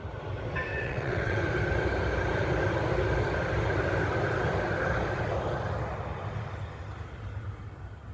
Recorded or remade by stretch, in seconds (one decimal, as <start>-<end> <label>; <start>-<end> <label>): 0.0-0.7 recorded; 0.7-1.4 remade; 1.4-8.1 recorded